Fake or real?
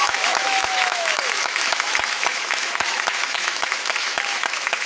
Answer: fake